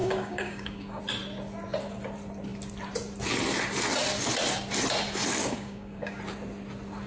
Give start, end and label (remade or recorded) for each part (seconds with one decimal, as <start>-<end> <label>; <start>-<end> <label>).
0.0-1.0 remade; 1.0-5.4 recorded; 5.4-6.2 remade; 6.2-7.1 recorded